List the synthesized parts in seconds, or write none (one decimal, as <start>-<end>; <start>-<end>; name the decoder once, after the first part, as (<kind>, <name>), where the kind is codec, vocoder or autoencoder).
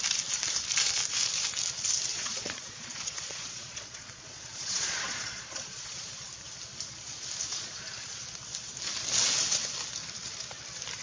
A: 2.1-6.3 (vocoder, Vocos); 7.5-8.2